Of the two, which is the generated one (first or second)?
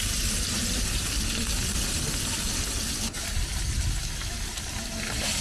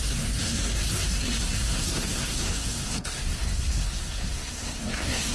second